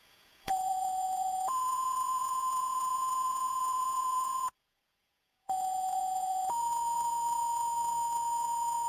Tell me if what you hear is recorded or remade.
remade